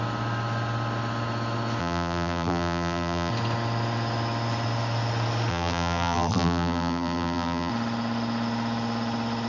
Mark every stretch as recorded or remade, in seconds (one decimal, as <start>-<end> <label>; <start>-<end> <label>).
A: 0.0-1.8 recorded; 1.8-3.3 remade; 3.3-5.5 recorded; 5.5-7.7 remade; 7.7-9.5 recorded